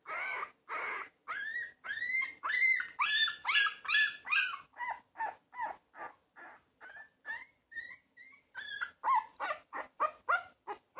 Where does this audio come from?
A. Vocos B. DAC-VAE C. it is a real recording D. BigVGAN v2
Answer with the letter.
C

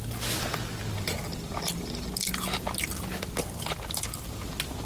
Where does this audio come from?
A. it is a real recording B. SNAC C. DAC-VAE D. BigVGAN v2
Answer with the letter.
A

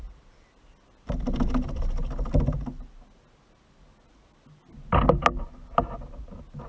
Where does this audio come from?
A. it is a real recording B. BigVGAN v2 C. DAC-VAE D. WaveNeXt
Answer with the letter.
A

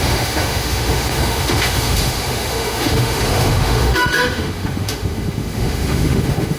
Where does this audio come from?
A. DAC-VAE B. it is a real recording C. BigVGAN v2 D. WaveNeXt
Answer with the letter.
A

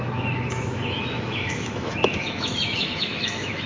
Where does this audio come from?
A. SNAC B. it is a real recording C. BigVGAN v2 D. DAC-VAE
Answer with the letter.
D